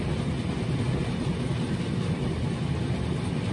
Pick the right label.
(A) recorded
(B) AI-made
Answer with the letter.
A